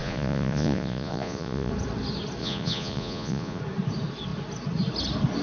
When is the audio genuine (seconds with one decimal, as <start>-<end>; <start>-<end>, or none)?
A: 1.7-2.4; 3.6-5.4